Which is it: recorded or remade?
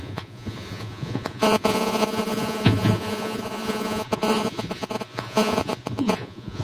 remade